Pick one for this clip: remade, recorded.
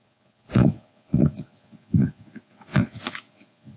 remade